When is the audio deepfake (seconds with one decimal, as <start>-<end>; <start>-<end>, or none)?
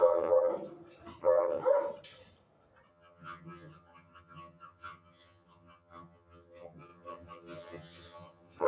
0.0-0.5; 1.2-1.6; 2.9-8.7